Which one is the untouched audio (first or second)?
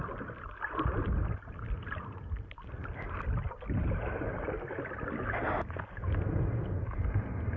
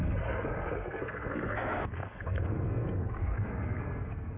first